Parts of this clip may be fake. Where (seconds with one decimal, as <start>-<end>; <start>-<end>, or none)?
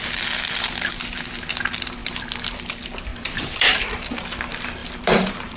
3.1-3.8; 4.8-5.6